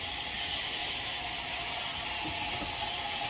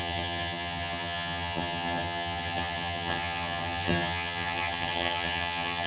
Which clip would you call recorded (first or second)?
first